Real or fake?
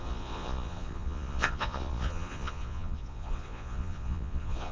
fake